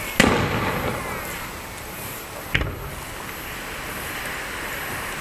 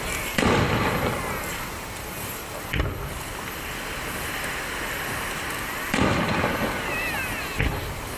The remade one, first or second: second